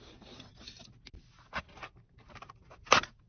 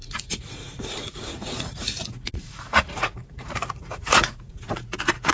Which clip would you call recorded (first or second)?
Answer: first